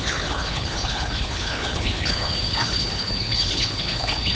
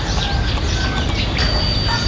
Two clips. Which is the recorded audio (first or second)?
second